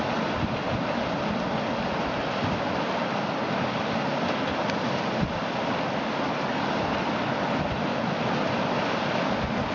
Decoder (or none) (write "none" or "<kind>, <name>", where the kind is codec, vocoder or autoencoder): none